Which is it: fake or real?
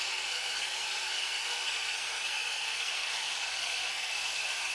fake